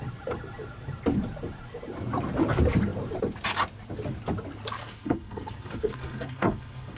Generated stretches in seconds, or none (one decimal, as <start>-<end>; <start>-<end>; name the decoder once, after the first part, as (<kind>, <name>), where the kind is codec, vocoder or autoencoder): 4.8-7.0 (codec, SNAC)